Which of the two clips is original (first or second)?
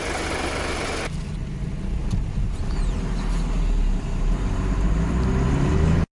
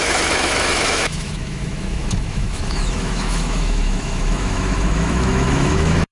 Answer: first